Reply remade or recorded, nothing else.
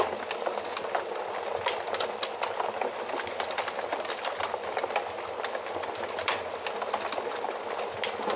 recorded